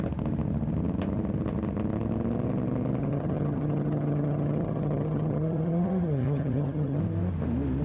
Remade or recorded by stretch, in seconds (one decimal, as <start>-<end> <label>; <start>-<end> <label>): 0.0-3.0 recorded; 3.0-7.0 remade; 7.0-7.8 recorded

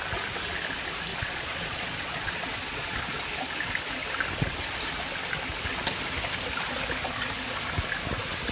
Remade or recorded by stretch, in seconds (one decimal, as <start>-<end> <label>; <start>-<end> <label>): 0.0-1.1 recorded; 1.1-3.2 remade; 3.2-8.5 recorded

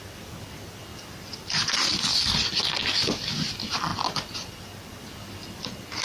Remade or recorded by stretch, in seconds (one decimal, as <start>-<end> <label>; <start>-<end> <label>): 0.0-6.0 recorded

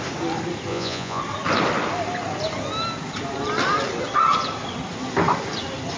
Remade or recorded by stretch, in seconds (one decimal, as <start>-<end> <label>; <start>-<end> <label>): 0.0-0.7 recorded; 0.7-1.2 remade; 1.2-6.0 recorded

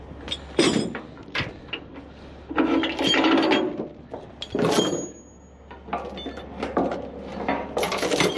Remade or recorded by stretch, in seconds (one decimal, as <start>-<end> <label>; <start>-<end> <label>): 0.0-8.4 recorded

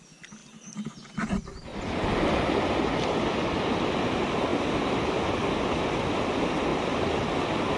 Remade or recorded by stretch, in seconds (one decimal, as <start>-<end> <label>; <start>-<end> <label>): 0.0-7.8 recorded

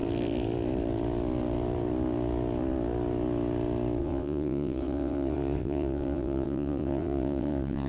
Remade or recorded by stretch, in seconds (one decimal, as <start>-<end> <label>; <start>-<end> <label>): 0.0-4.0 recorded; 4.0-7.9 remade

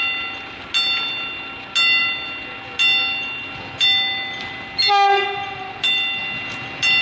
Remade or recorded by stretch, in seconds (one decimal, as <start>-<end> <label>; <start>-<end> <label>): 0.0-7.0 recorded